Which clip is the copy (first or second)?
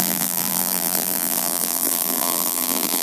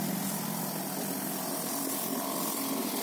first